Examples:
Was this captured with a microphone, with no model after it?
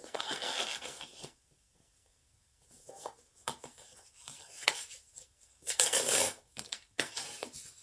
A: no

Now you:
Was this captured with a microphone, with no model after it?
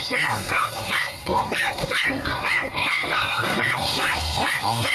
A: no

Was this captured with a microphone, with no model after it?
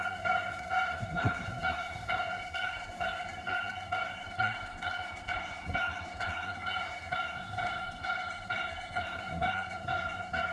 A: no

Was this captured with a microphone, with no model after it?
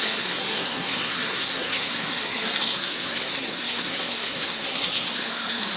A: no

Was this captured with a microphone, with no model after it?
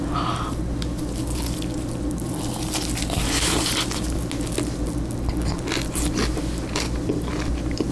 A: yes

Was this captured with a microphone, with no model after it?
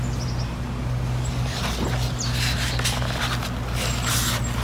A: yes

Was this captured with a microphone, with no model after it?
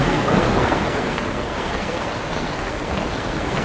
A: no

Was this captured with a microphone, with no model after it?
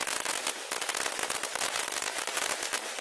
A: yes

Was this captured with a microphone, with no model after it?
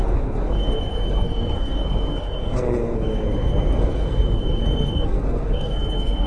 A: no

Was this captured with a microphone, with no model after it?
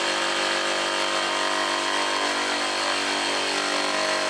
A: yes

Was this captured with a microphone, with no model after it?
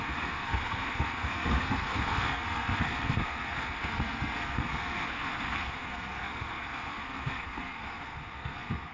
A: no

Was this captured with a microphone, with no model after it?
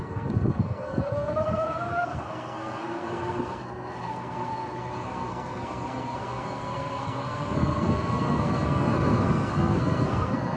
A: no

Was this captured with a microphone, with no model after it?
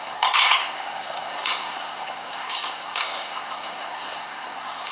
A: no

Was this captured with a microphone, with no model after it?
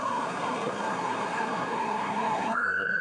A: no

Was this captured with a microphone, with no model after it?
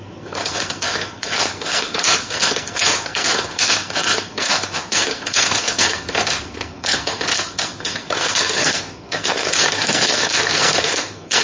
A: no